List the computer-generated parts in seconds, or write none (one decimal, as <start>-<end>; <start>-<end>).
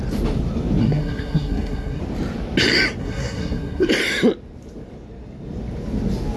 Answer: 0.8-2.0; 3.0-3.9